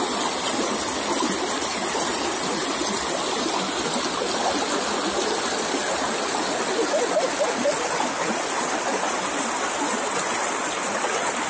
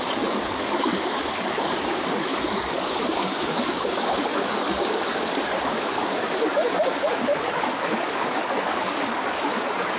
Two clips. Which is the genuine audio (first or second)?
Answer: first